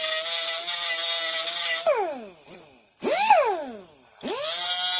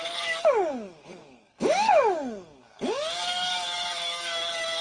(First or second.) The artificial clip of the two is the second